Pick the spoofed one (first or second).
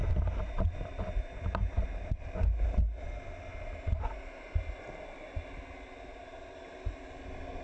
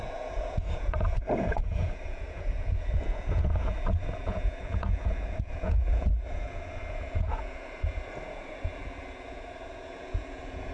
second